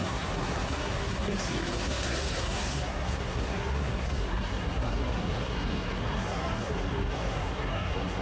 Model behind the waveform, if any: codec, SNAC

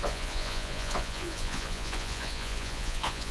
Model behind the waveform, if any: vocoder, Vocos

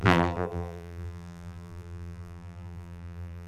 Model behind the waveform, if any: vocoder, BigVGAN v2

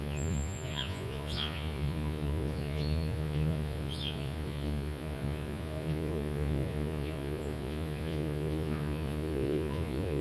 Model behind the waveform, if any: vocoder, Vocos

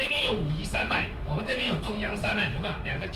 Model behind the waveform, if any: autoencoder, DAC-VAE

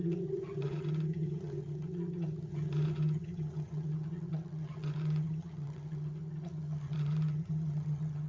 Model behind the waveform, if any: vocoder, HiFi-GAN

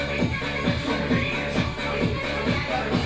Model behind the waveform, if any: none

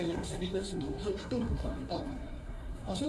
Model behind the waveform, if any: codec, SNAC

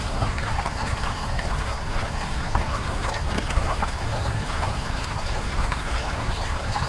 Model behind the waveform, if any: codec, SNAC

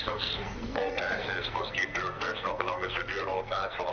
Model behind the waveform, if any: codec, SNAC